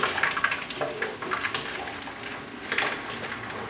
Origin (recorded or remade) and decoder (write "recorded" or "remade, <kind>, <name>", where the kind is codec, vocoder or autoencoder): recorded